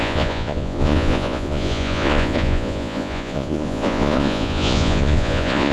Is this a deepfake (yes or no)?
yes